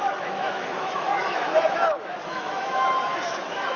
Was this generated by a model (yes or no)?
yes